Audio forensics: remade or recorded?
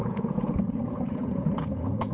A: remade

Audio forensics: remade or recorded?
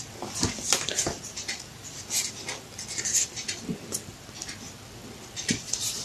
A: recorded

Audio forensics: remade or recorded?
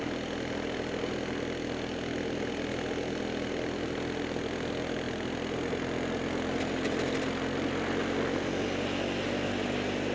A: recorded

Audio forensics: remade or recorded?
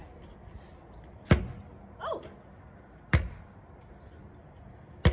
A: recorded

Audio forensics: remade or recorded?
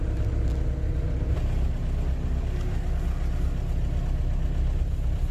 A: recorded